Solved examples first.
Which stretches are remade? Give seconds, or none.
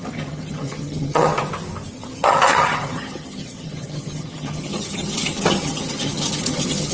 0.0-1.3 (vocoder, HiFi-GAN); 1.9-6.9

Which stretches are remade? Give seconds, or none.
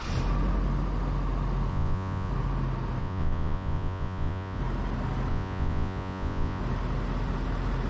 1.7-2.3 (vocoder, Vocos); 3.0-4.6; 5.3-6.6